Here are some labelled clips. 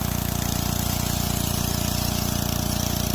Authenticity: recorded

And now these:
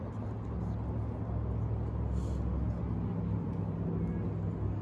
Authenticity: recorded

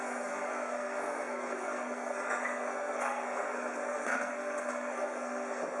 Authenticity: remade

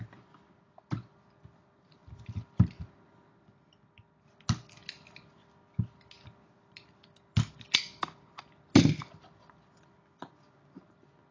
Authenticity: recorded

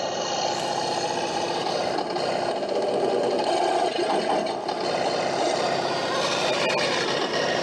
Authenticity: recorded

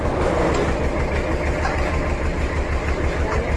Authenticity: recorded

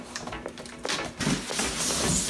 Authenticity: recorded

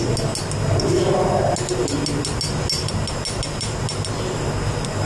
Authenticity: recorded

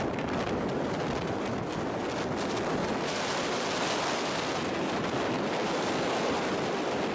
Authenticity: recorded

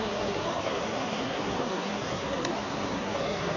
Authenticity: remade